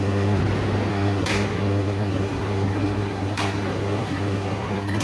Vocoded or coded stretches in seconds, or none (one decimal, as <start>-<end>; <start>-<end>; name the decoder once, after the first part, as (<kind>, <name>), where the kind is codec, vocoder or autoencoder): 0.0-0.4 (codec, SNAC); 0.9-5.0